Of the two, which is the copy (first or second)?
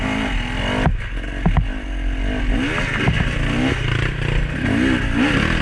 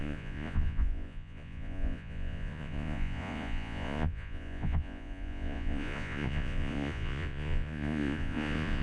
second